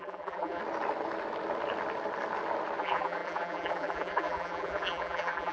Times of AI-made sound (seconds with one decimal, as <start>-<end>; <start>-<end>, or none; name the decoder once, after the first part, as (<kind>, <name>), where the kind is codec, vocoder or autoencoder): 0.0-0.6 (vocoder, BigVGAN v2); 2.8-5.5

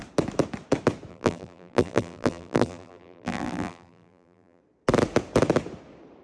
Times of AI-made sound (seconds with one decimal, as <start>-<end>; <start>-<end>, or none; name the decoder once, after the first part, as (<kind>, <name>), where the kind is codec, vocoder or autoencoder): 1.1-4.6 (vocoder, BigVGAN v2)